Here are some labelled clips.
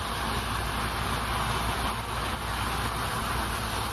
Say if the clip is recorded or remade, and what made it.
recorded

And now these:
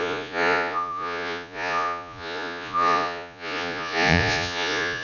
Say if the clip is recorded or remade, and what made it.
remade, vocoder, Vocos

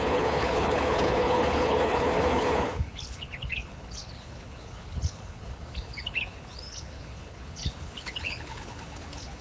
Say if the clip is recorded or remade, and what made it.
remade, codec, HILCodec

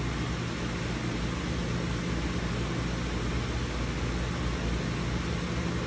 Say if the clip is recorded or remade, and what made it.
recorded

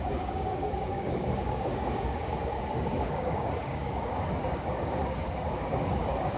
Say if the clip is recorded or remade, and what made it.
remade, codec, DAC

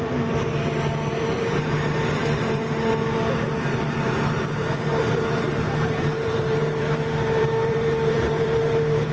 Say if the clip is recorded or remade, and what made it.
remade, vocoder, BigVGAN v2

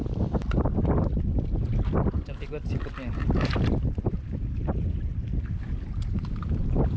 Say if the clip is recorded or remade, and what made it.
remade, vocoder, BigVGAN v2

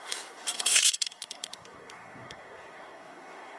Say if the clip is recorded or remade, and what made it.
remade, codec, SNAC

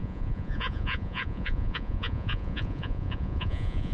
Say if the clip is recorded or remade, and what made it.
remade, vocoder, Vocos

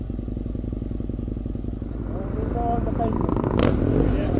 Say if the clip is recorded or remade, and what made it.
recorded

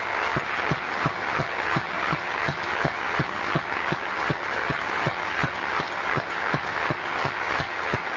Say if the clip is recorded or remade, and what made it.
remade, vocoder, HiFi-GAN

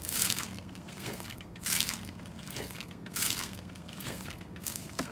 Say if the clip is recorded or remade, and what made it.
remade, codec, SNAC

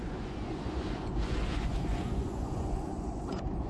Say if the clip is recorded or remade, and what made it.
remade, vocoder, Vocos